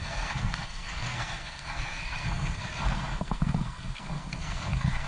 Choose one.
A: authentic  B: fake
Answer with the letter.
B